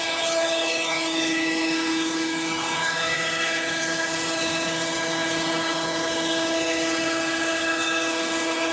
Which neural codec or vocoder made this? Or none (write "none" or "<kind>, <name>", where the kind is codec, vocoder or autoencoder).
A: codec, HILCodec